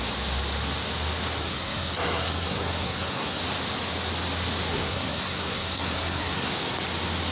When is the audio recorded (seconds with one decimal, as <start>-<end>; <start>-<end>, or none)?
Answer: 0.0-1.4; 3.4-4.7; 6.5-7.3